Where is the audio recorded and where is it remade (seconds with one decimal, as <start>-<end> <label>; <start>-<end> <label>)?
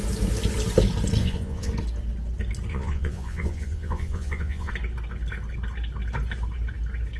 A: 0.0-1.2 recorded; 1.2-1.7 remade; 1.7-2.7 recorded; 2.7-4.7 remade; 4.7-7.2 recorded